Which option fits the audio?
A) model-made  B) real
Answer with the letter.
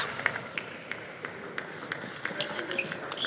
B